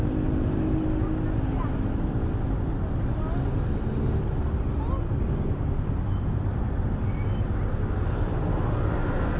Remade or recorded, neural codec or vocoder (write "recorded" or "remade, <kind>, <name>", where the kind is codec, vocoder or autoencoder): recorded